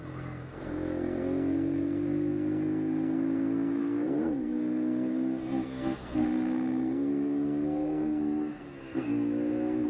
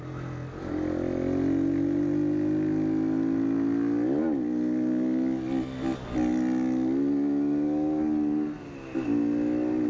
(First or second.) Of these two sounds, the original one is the second